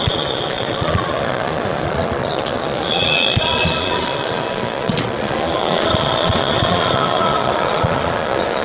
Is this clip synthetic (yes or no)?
yes